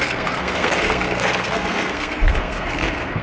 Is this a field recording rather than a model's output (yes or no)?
no